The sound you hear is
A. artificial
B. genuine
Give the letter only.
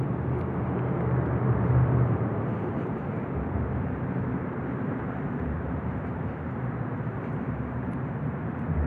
A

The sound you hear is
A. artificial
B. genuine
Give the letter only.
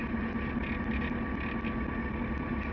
B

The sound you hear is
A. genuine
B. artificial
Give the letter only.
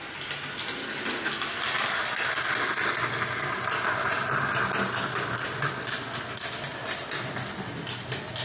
A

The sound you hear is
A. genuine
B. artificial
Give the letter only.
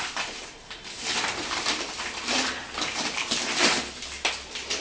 A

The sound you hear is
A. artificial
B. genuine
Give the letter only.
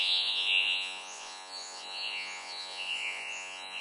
A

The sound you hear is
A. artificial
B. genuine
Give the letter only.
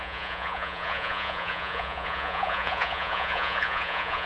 A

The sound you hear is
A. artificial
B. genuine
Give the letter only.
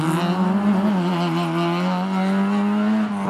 B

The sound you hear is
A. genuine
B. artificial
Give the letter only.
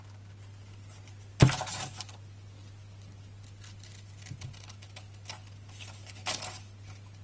A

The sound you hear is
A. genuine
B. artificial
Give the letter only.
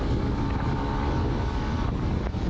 B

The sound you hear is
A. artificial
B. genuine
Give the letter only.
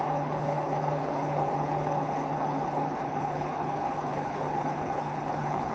A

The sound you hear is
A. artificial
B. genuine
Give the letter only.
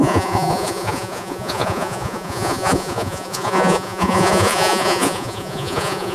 A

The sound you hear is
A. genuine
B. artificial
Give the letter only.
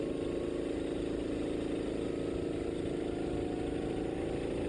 A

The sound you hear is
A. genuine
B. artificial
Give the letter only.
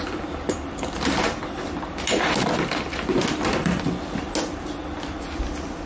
A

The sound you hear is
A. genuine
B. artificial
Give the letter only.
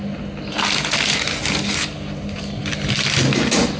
A